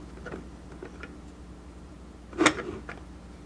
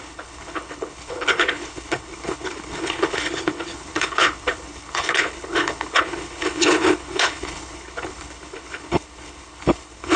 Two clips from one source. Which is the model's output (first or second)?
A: second